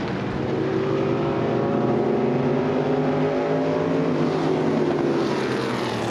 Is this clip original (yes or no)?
yes